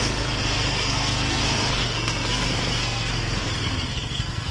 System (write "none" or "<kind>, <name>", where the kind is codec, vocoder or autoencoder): codec, SNAC